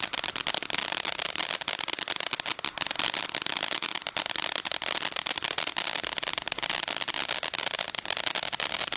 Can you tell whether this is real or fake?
real